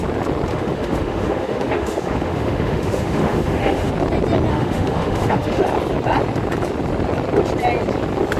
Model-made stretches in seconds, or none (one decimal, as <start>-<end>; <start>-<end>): 0.5-3.9; 4.5-5.6